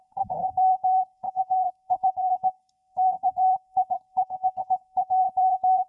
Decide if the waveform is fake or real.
fake